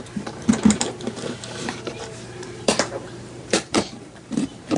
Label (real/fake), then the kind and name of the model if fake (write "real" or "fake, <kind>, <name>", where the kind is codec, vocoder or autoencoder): fake, vocoder, BigVGAN v2